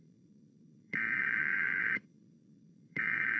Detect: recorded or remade remade